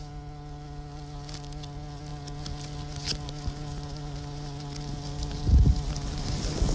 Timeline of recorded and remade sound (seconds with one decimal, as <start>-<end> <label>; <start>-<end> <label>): 0.0-6.7 recorded